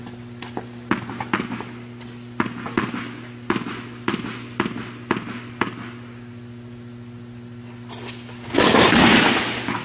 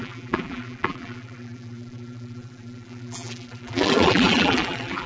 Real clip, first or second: first